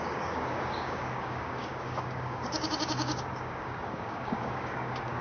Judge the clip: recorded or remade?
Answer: remade